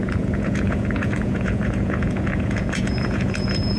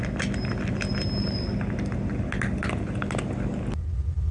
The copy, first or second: first